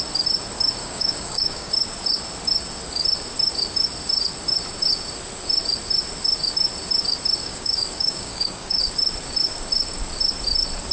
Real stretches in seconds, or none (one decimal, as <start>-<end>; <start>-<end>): 0.0-0.8; 1.7-7.4; 8.8-10.9